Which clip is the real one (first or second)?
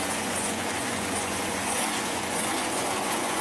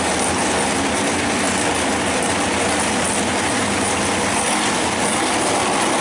second